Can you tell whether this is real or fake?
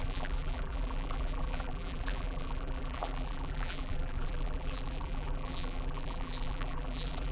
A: fake